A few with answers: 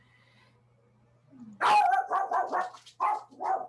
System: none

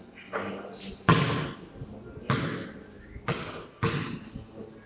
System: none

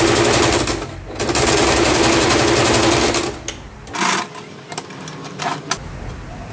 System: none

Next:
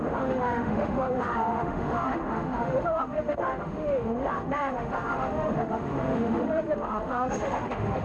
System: autoencoder, DAC-VAE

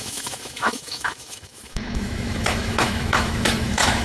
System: autoencoder, DAC-VAE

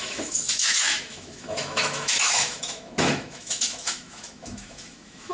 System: autoencoder, DAC-VAE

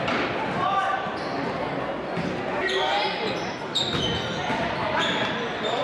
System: none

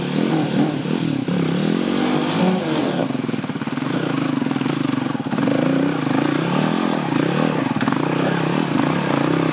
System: none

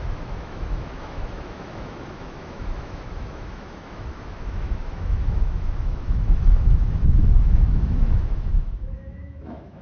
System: autoencoder, DAC-VAE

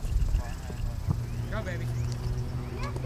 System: none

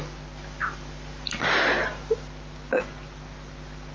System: none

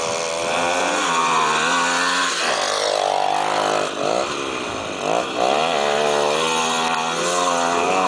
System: none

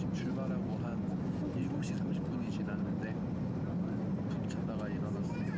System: none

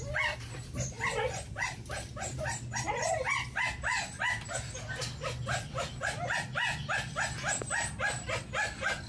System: none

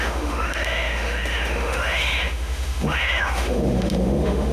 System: autoencoder, DAC-VAE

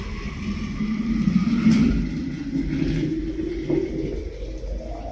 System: none